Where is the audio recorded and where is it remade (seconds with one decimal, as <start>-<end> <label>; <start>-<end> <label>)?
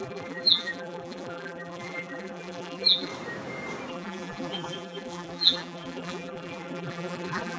0.0-3.1 remade; 3.1-3.9 recorded; 3.9-7.6 remade